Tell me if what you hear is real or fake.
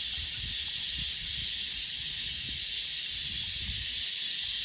real